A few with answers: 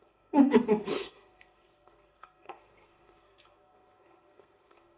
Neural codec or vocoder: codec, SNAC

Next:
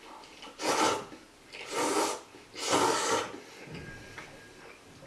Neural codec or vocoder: none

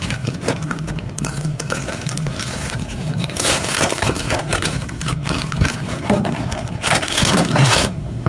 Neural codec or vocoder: codec, SNAC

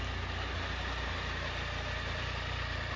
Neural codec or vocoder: none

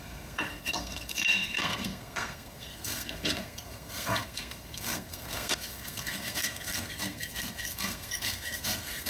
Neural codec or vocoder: codec, SNAC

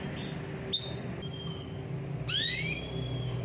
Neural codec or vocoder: none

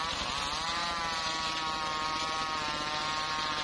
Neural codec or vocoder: none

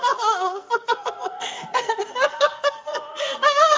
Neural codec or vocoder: codec, SNAC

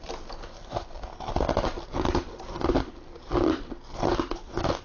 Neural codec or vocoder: none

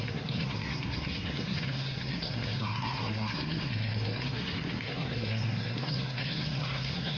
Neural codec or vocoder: codec, SNAC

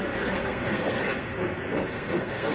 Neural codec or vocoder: codec, SNAC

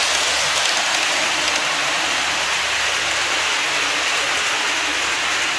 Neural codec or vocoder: none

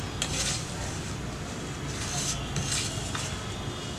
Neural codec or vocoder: none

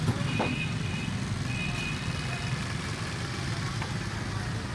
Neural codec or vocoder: none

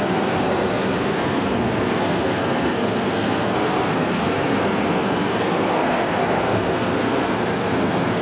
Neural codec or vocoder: codec, SNAC